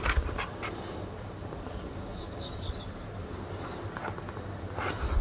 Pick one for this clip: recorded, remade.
recorded